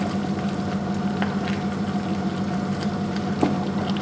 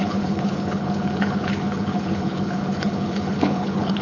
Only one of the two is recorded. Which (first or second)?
first